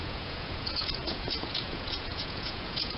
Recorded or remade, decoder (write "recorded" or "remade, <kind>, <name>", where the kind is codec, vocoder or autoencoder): remade, vocoder, Vocos